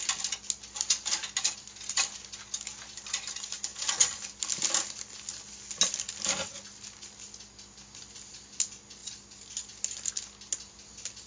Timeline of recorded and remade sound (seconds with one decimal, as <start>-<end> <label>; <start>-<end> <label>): 0.0-11.3 recorded